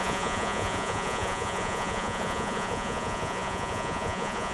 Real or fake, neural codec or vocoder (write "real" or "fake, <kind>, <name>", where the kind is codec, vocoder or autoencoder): fake, vocoder, Vocos